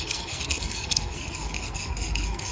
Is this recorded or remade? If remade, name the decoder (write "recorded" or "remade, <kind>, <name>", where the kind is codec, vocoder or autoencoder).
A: remade, codec, SNAC